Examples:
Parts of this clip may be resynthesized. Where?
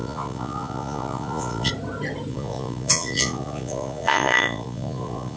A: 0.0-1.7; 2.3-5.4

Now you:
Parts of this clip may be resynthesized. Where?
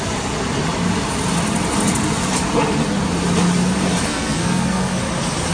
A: 4.1-5.0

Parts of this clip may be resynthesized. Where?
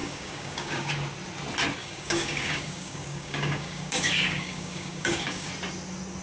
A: 0.0-0.9; 1.8-5.5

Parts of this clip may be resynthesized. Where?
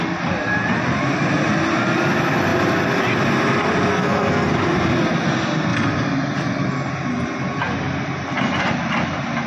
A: 3.9-4.5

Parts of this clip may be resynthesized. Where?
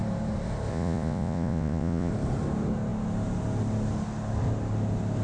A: 0.7-2.1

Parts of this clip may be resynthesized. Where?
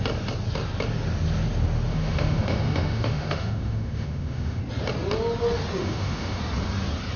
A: 1.9-4.6; 5.8-6.4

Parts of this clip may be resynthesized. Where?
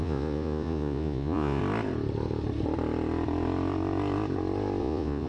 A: 0.0-1.6; 4.8-5.3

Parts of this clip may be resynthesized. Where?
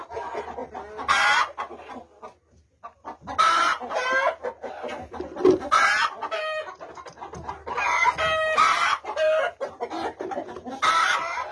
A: none